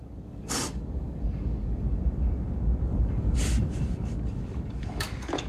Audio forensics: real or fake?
fake